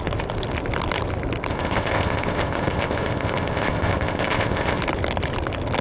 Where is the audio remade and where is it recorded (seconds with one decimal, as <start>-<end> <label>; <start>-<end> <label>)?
0.0-1.5 recorded; 1.5-4.8 remade; 4.8-5.8 recorded